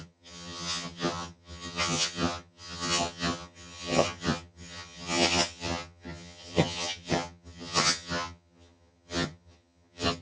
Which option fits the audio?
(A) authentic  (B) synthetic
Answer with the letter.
B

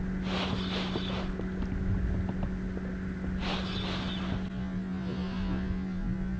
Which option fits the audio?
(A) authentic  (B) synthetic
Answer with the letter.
A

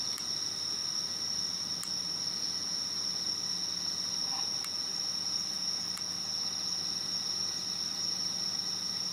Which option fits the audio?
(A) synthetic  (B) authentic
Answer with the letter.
B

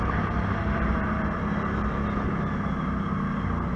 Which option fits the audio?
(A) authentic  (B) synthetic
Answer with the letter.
A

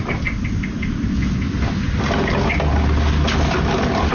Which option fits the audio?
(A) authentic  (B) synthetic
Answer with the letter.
A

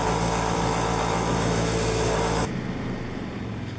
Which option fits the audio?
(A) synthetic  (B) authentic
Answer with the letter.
A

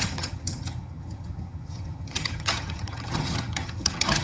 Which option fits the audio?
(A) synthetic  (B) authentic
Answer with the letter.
A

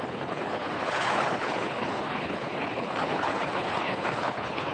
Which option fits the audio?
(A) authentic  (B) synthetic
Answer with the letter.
B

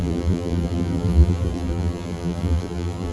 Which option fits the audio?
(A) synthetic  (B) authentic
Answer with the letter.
A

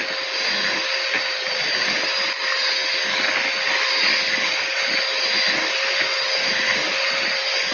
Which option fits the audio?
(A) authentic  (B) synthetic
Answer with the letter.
A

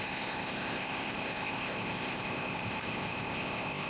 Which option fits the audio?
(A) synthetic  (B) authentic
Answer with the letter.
A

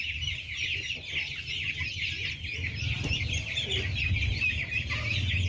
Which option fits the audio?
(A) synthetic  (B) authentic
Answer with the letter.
B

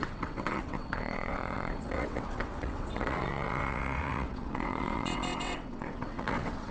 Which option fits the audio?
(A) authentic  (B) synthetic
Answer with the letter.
B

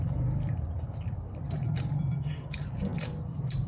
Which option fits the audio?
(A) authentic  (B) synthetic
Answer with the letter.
B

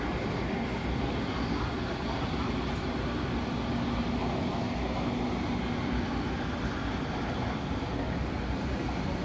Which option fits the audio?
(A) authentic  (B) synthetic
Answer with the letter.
A